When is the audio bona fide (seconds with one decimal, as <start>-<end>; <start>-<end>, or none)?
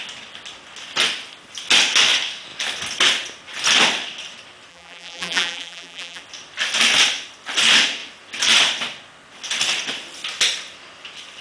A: 0.0-4.7; 6.2-11.4